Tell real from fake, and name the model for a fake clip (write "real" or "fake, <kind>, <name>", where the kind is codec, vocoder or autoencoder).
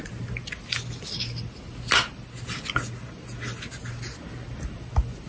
real